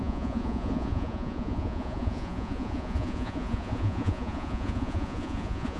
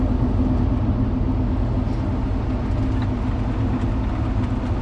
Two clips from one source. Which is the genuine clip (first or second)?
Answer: second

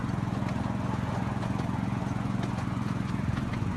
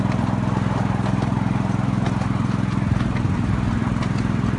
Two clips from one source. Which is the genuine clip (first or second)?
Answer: second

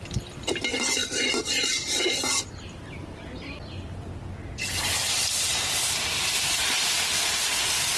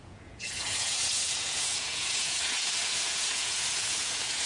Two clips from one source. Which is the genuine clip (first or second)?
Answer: first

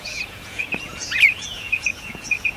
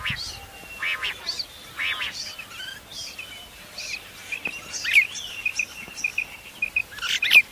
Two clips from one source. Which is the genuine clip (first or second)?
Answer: second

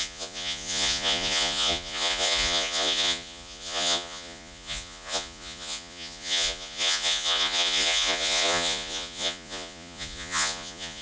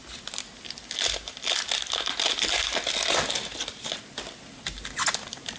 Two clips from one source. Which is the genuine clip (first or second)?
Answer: second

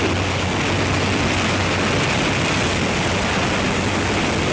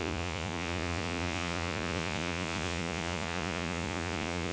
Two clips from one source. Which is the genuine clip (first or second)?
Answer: first